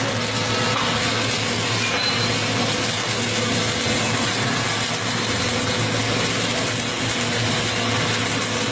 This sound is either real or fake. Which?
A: real